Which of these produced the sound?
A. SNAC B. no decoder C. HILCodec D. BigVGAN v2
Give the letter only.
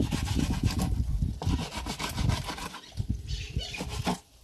B